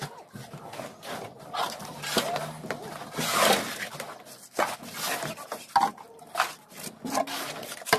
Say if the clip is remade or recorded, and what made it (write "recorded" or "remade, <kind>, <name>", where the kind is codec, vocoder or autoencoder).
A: recorded